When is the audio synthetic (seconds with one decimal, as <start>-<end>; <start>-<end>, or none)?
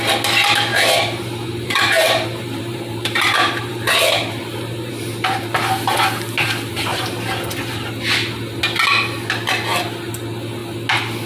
0.7-4.9